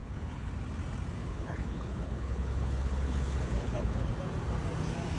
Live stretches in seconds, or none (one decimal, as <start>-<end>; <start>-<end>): 0.5-1.2; 4.1-5.2

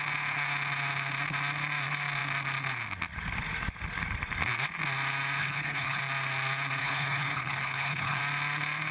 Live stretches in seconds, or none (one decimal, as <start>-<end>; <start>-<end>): 0.0-5.4; 6.0-6.8; 8.2-8.9